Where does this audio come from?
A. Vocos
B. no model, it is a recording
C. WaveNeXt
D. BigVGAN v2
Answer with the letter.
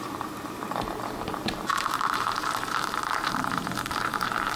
D